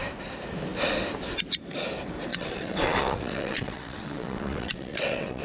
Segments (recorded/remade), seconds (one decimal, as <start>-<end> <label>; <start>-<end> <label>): 0.0-2.3 recorded; 2.3-5.4 remade